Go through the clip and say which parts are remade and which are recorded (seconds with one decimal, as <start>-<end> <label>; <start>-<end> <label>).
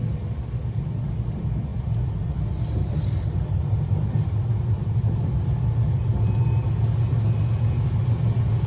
0.0-1.7 recorded; 1.7-6.7 remade; 6.7-8.7 recorded